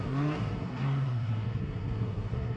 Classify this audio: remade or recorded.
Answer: remade